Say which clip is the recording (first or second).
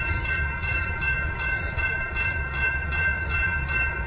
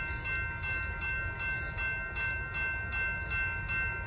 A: second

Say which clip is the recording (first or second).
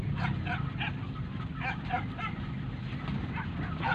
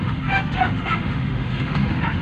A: first